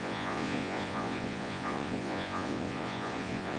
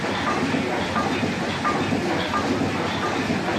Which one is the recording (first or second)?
second